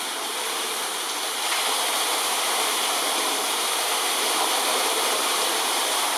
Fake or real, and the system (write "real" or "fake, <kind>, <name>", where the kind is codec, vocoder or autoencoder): fake, vocoder, BigVGAN v2